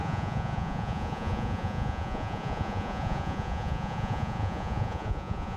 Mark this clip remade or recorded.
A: remade